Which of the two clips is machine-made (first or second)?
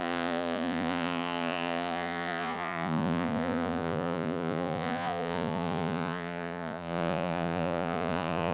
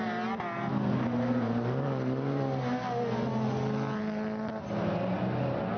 first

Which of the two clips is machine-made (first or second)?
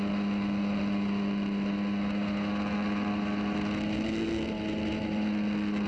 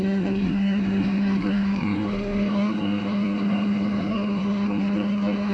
second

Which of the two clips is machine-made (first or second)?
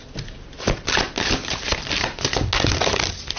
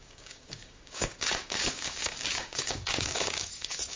second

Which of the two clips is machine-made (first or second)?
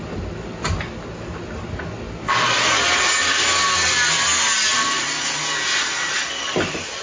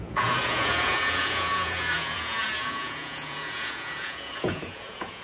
second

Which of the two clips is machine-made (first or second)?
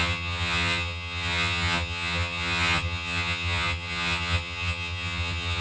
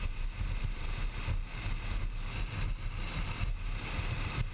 first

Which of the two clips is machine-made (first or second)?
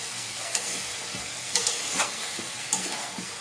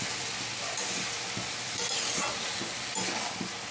first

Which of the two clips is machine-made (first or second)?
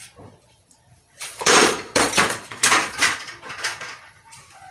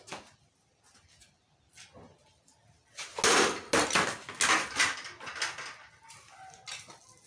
first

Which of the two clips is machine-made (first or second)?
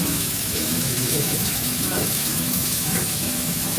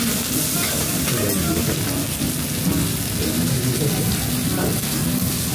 first